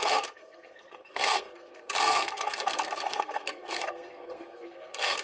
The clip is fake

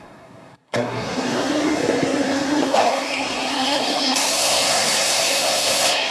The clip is fake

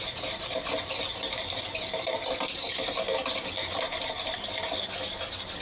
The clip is real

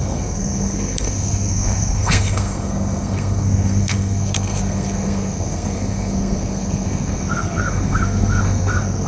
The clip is fake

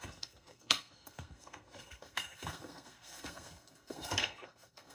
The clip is fake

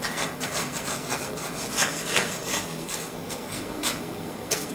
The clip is fake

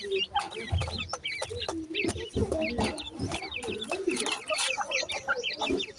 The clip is real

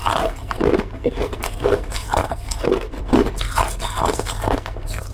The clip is fake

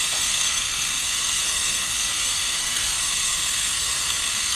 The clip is fake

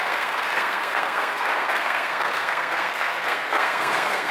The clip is fake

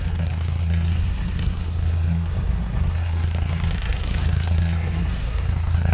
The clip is fake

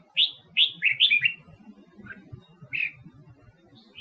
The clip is real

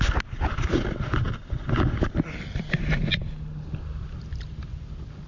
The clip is real